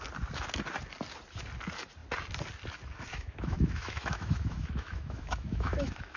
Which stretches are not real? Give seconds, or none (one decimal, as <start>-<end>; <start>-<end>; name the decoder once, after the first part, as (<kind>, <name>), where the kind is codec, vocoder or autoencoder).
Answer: 3.1-6.2 (autoencoder, DAC-VAE)